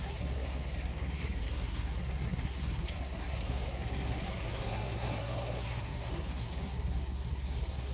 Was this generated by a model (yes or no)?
yes